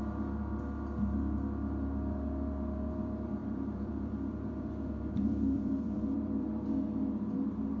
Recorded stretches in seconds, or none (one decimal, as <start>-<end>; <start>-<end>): 0.0-3.4